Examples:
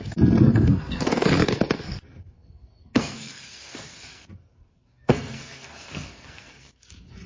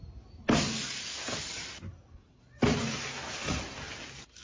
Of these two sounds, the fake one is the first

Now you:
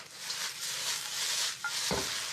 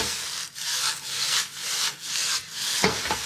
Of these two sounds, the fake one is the second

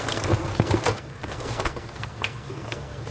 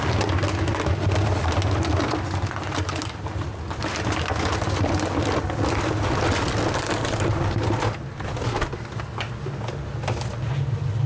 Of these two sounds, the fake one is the first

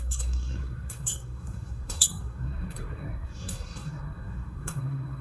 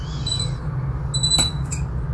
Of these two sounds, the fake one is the first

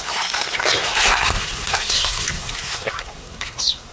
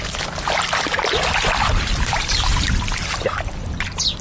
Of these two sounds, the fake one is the first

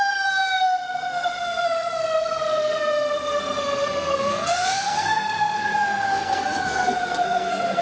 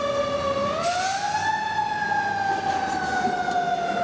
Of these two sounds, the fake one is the first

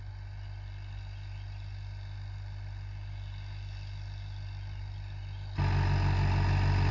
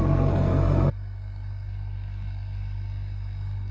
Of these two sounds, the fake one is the second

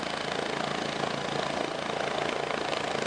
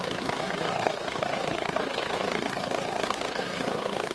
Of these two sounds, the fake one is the second